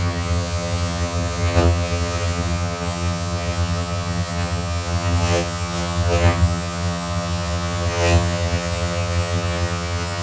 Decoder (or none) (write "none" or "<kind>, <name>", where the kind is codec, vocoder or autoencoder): vocoder, HiFi-GAN